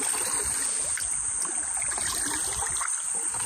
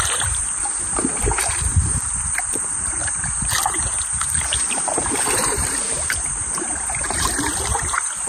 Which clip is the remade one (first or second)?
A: second